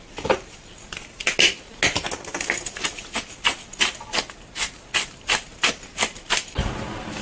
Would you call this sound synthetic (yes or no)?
no